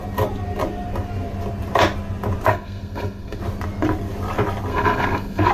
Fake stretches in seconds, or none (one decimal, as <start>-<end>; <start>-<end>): 2.5-3.4; 4.7-5.5